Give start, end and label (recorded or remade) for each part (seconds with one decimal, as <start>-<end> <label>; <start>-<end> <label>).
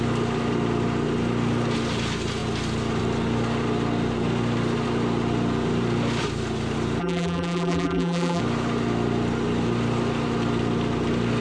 0.0-7.0 recorded; 7.0-8.4 remade; 8.4-11.4 recorded